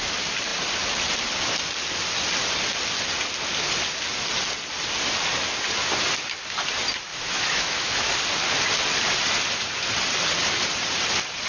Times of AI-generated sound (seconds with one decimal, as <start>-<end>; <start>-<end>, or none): 7.1-8.1